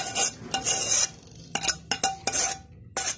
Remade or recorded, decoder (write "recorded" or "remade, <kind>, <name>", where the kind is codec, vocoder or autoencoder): recorded